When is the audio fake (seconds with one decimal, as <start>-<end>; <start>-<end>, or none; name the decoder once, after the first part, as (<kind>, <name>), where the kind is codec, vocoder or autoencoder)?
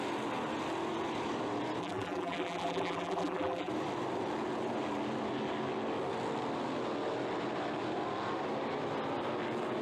1.8-3.7 (vocoder, BigVGAN v2)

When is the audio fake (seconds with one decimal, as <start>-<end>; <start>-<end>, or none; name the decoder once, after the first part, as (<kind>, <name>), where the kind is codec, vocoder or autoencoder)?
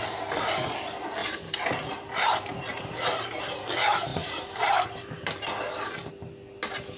1.2-3.4 (vocoder, BigVGAN v2); 4.1-6.1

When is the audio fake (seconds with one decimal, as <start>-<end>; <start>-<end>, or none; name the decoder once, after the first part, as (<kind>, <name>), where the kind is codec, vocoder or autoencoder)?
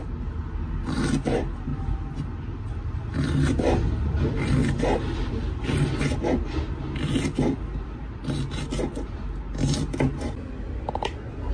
none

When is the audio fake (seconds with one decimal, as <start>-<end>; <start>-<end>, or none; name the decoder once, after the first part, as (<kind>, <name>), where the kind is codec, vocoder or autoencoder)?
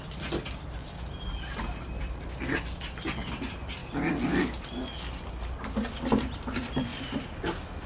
none